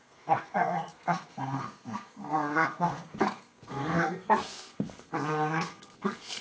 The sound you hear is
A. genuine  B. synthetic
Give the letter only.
B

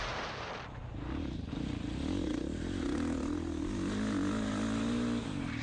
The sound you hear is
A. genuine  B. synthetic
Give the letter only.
A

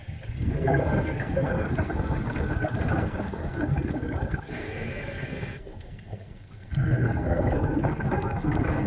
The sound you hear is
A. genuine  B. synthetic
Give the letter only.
B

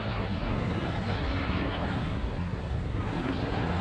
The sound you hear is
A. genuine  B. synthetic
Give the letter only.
B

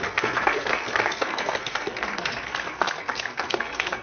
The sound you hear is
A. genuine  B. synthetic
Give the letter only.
B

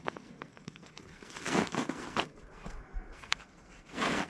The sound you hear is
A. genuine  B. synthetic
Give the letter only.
B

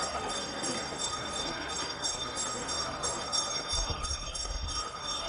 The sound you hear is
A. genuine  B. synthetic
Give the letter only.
B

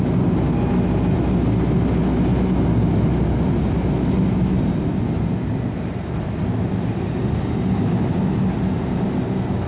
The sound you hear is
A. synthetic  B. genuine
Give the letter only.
B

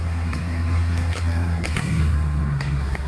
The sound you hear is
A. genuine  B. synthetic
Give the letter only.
B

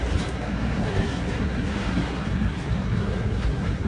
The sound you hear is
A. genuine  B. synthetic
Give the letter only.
B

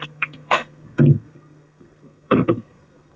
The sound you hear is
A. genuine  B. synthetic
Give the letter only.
B